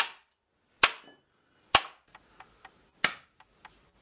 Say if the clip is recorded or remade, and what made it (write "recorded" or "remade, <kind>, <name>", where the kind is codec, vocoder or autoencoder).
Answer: recorded